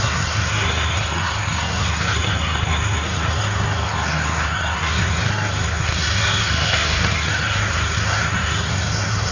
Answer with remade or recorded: remade